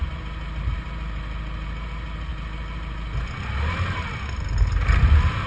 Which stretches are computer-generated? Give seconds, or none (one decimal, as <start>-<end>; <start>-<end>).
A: none